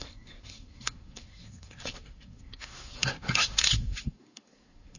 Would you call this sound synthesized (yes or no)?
yes